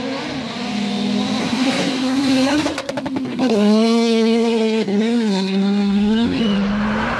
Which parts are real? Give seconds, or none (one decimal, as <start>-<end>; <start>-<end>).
0.0-1.4; 2.9-3.3; 6.4-7.2